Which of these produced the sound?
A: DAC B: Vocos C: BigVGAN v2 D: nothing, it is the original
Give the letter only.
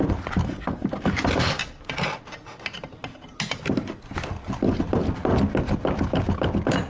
D